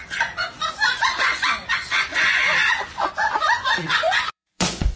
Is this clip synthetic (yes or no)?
yes